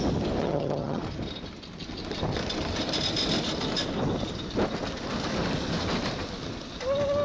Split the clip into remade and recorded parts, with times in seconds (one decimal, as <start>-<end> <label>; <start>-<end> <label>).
0.0-0.4 recorded; 0.4-1.0 remade; 1.0-7.2 recorded